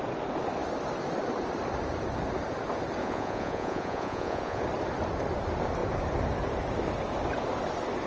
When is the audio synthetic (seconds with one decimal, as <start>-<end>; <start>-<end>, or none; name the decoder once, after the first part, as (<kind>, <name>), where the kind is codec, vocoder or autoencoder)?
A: 3.0-4.6 (vocoder, Vocos)